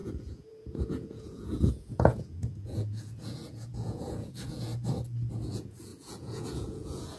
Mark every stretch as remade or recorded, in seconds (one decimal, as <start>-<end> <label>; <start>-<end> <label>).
0.0-4.7 remade; 4.7-5.5 recorded; 5.5-7.2 remade